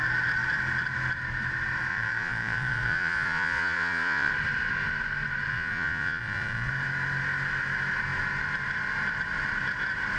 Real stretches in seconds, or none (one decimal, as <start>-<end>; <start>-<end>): 0.0-1.9; 4.3-5.5; 6.7-10.2